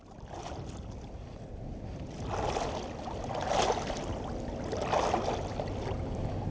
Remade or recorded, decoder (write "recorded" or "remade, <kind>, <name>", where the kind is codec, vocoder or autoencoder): recorded